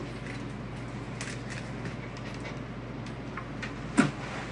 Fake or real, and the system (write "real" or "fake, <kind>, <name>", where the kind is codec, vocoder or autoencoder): real